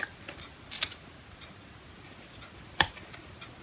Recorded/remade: recorded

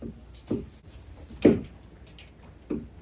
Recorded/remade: recorded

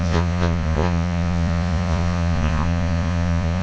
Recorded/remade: remade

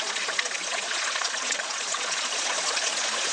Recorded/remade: remade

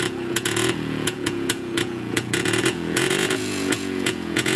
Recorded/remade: remade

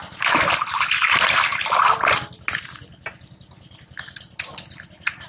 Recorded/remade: recorded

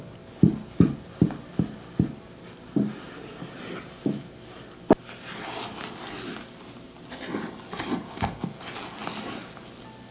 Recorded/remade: recorded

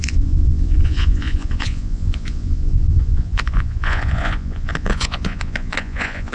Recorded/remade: remade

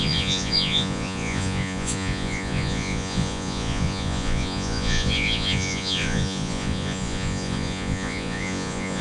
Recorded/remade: remade